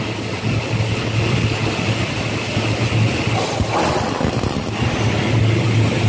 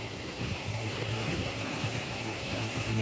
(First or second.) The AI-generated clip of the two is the second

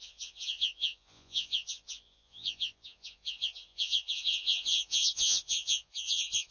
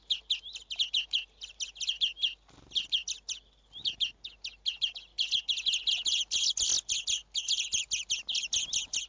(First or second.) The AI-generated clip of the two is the first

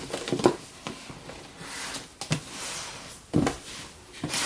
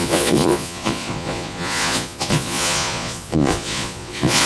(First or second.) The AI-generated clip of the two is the second